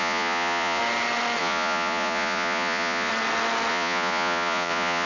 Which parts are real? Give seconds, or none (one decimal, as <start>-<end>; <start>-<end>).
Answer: 0.8-1.4; 3.1-3.7

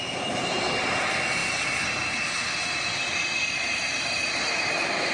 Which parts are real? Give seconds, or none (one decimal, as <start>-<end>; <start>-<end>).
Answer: 0.0-5.1

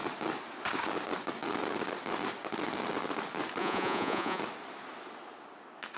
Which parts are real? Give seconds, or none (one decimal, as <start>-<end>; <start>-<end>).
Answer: 0.0-3.6; 4.4-6.0

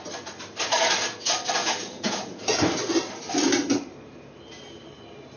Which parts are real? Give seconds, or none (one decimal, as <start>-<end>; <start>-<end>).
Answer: 0.0-1.6; 2.6-5.4

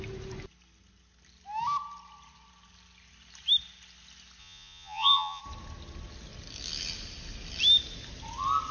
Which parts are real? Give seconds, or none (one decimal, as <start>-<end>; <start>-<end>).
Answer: 0.0-4.4; 5.4-8.7

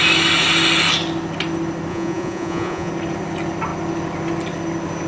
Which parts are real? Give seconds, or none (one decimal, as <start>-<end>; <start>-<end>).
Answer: 0.0-1.9; 2.9-5.1

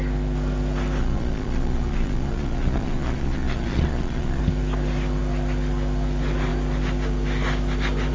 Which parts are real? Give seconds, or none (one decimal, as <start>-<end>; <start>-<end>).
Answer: 0.0-1.0; 4.4-8.1

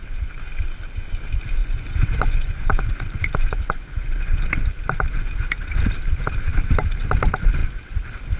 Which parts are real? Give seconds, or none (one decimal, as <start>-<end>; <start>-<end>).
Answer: 0.0-1.6; 4.4-8.4